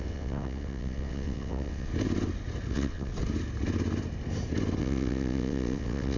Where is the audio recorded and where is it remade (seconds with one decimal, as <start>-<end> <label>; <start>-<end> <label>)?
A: 0.0-1.9 remade; 1.9-2.7 recorded; 2.7-3.1 remade; 3.1-4.8 recorded; 4.8-6.2 remade